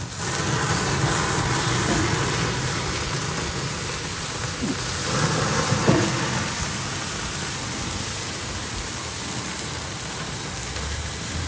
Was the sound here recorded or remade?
recorded